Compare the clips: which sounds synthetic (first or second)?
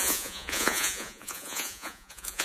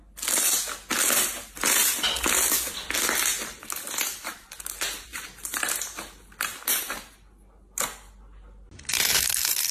first